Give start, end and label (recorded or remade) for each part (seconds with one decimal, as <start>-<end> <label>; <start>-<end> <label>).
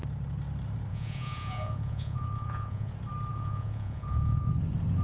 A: 0.0-0.9 recorded; 0.9-2.9 remade; 2.9-3.3 recorded; 3.3-4.5 remade; 4.5-5.0 recorded